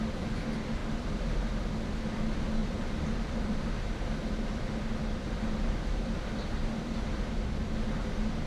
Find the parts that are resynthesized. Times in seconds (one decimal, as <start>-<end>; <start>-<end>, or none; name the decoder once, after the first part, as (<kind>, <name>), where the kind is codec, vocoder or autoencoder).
0.8-1.4 (vocoder, BigVGAN v2); 2.6-7.3